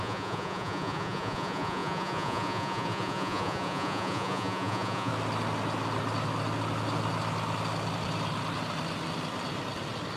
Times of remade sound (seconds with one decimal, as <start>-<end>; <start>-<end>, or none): 0.0-5.1